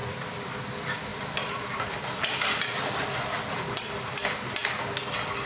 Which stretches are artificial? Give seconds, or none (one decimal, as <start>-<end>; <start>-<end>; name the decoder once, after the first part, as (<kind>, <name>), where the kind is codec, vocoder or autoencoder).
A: 0.0-0.6 (vocoder, BigVGAN v2); 1.1-4.0